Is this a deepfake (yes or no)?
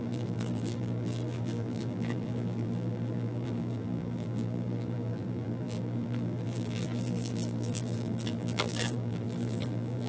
yes